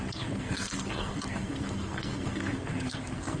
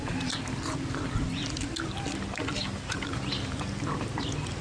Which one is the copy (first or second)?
first